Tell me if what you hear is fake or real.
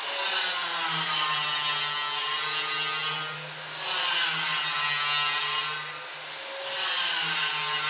real